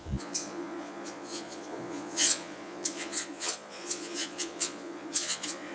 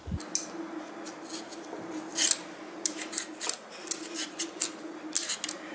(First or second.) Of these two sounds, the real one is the second